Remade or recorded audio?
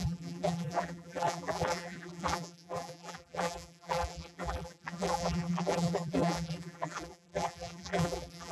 remade